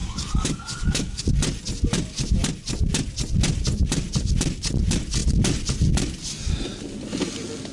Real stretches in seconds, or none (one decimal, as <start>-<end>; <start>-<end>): 1.2-7.7